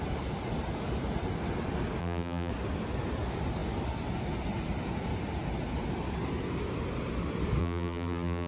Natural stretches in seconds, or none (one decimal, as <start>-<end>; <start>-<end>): 0.0-2.0; 2.5-7.6